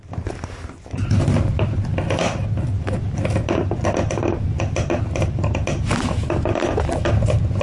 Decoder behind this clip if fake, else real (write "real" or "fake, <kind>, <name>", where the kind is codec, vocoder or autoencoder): real